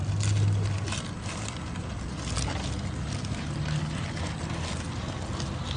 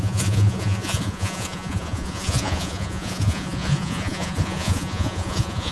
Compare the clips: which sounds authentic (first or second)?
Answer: first